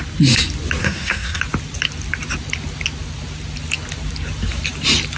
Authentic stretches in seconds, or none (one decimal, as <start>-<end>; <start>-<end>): 0.0-0.8; 1.4-5.2